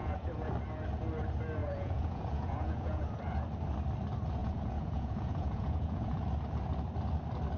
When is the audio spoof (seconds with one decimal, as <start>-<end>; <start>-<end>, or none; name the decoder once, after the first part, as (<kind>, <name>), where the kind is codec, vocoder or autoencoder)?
0.0-0.5 (vocoder, Vocos); 1.6-3.2; 4.4-6.2